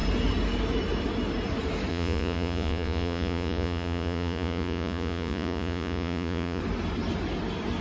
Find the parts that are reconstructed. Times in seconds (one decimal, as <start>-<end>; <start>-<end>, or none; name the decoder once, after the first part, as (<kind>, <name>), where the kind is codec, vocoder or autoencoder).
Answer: 1.9-6.6 (vocoder, Vocos)